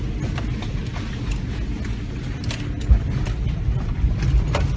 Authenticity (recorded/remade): recorded